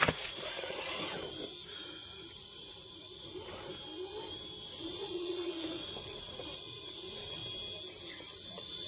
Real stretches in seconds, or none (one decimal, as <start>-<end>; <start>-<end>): 1.2-1.7; 3.3-4.7; 7.4-8.0